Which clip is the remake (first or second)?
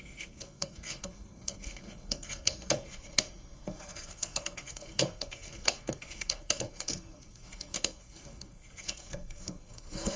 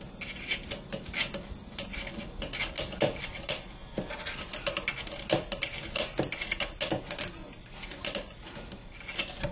first